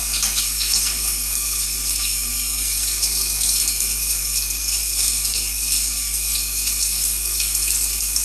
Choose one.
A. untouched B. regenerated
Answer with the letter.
B